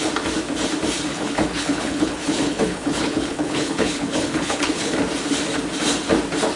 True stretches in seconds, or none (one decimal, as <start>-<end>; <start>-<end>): 0.0-1.1; 4.9-6.6